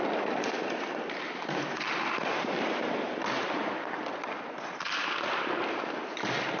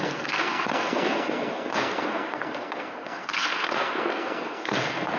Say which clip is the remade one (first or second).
second